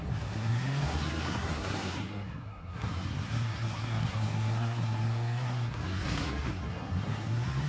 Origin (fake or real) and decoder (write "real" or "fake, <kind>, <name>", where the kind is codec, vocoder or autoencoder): fake, codec, SNAC